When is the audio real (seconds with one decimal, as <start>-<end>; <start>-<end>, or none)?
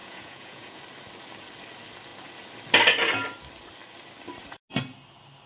0.8-5.5